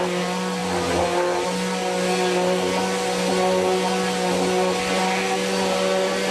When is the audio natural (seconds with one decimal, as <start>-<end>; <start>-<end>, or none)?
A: 0.0-6.3